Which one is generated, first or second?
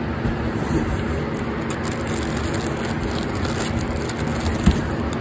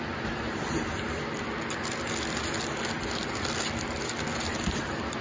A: second